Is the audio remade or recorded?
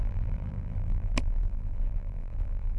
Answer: remade